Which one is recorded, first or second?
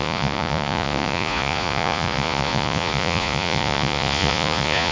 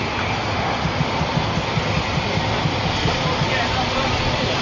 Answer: second